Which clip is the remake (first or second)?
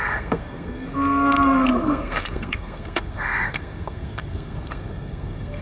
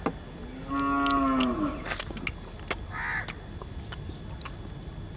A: first